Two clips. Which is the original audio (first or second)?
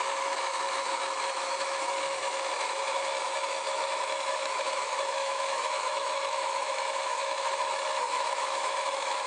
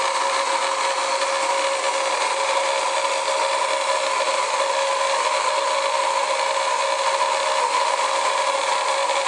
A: second